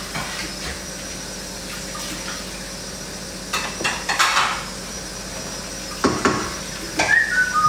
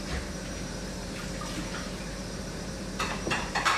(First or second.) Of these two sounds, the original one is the first